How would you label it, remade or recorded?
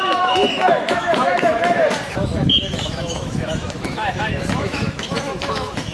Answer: remade